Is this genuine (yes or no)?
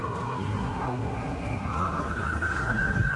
no